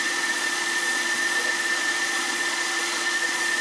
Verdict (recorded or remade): remade